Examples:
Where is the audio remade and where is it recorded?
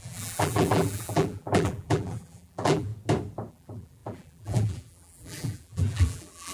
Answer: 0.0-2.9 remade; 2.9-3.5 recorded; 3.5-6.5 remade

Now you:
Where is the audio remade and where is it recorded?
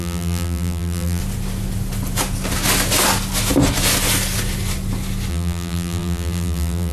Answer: 0.0-1.2 remade; 1.2-5.3 recorded; 5.3-6.9 remade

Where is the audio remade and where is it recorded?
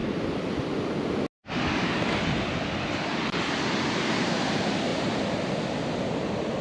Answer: 0.0-6.6 recorded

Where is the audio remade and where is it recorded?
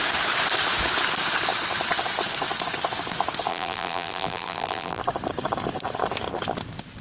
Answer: 0.0-3.5 recorded; 3.5-5.0 remade; 5.0-7.0 recorded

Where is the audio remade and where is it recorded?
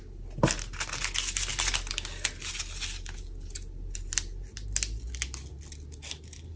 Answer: 0.0-6.6 recorded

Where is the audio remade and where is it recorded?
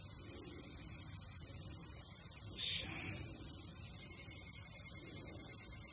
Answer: 0.0-1.8 recorded; 1.8-2.4 remade; 2.4-3.7 recorded; 3.7-4.5 remade; 4.5-5.9 recorded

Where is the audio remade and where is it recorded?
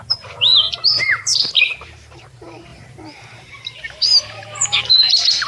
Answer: 0.0-0.5 remade; 0.5-1.6 recorded; 1.6-5.5 remade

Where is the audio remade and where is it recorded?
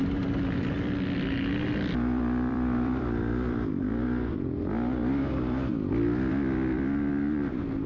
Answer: 0.0-1.7 recorded; 1.7-4.0 remade; 4.0-7.9 recorded